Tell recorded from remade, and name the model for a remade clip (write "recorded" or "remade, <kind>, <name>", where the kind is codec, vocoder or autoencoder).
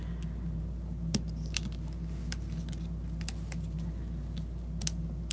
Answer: recorded